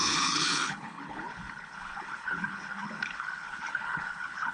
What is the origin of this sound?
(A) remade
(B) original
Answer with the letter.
A